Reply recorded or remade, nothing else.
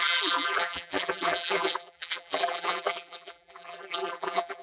remade